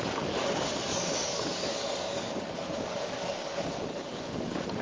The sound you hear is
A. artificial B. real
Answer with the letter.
A